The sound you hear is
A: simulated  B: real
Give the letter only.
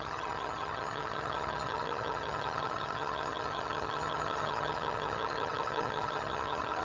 A